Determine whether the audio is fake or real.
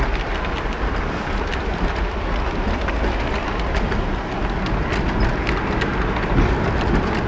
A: real